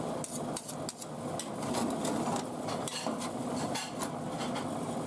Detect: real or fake real